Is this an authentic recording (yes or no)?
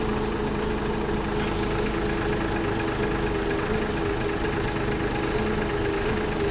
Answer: yes